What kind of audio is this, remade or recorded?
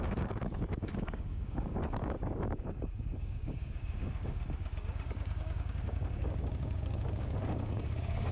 remade